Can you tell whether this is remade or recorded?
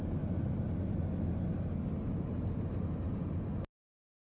recorded